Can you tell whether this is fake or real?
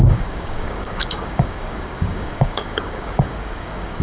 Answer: fake